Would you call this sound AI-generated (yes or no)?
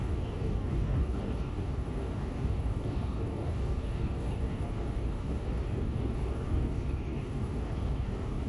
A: yes